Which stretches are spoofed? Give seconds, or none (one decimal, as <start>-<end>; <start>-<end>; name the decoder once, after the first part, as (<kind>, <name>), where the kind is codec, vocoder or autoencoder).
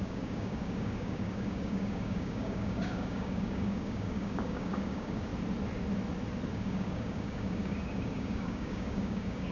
0.0-5.3 (codec, DAC); 6.5-9.5